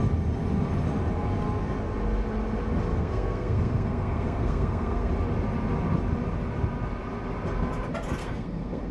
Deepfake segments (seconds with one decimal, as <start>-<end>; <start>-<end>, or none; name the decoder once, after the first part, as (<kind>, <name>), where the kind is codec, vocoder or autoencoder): 2.9-5.1 (codec, SNAC); 8.2-8.9